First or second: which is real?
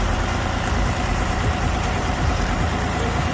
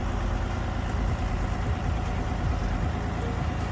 second